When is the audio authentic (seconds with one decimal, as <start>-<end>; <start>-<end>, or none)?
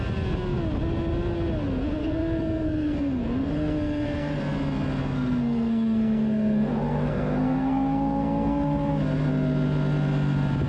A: 0.0-2.0; 4.4-5.0; 8.9-10.7